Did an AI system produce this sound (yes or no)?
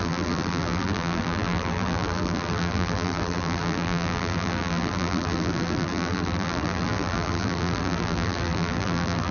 yes